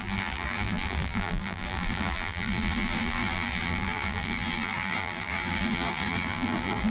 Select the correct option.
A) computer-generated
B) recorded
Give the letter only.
A